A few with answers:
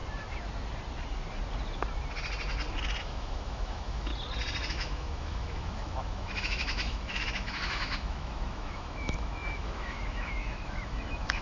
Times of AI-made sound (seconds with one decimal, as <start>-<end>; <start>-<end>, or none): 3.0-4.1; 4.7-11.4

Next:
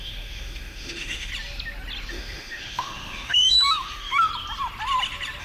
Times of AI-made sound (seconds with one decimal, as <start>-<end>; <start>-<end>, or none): 0.0-1.3; 2.1-4.3

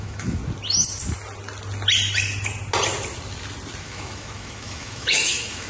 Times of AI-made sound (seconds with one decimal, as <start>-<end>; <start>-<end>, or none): 0.0-0.4; 3.8-5.7

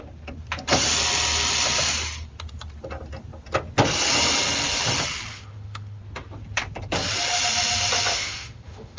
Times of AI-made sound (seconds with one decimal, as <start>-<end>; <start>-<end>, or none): 5.3-6.0; 8.1-9.0

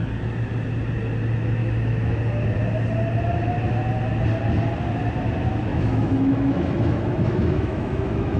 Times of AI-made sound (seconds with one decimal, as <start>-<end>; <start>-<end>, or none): 1.6-2.2; 5.7-8.4

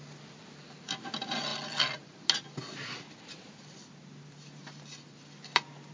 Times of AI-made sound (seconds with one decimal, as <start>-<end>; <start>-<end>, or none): none

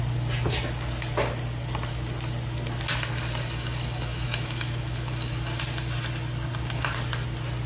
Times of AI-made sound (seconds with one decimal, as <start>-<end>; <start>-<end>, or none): 4.1-5.1

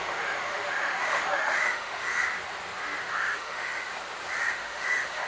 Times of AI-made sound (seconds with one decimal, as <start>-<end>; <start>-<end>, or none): 0.0-2.1; 3.0-3.9; 4.5-5.3